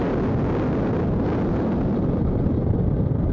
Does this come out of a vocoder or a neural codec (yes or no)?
no